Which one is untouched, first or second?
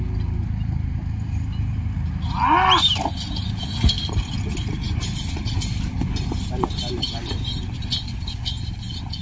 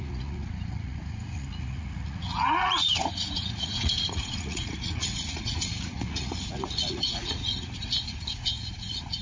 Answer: first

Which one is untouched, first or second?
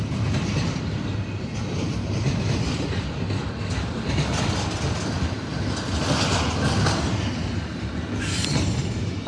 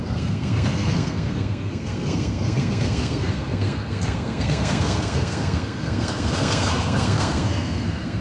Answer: first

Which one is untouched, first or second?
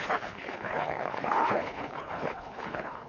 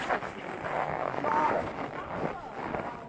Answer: second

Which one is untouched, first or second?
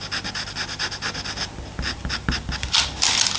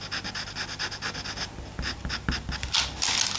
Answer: second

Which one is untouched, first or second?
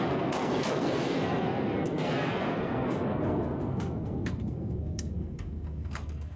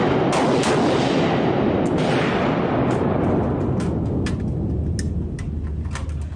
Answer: second